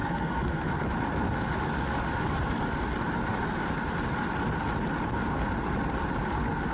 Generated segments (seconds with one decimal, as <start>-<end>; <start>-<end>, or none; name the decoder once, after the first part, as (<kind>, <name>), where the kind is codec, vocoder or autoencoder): 0.0-0.7 (codec, SNAC)